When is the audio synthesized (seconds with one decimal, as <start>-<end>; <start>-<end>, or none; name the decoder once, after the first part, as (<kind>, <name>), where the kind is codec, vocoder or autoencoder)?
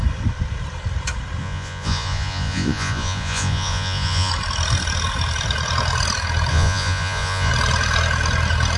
1.4-4.3 (vocoder, Vocos); 6.5-7.5